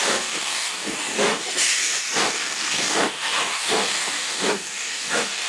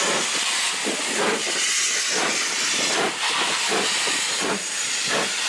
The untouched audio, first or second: second